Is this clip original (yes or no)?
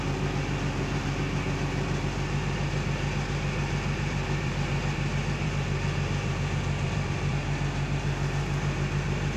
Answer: no